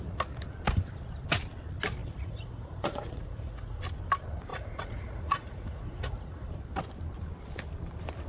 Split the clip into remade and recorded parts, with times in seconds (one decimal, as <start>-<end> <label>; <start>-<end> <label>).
0.0-2.0 recorded; 2.0-3.8 remade; 3.8-4.5 recorded; 4.5-6.5 remade; 6.5-8.3 recorded